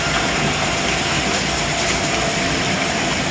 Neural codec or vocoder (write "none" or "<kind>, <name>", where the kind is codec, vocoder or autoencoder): none